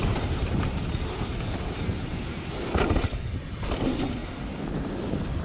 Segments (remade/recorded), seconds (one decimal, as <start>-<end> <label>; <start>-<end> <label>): 0.0-5.4 recorded